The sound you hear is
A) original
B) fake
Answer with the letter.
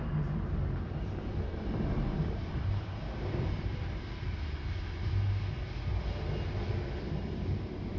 A